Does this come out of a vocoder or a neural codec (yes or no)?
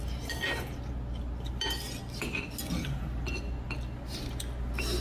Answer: no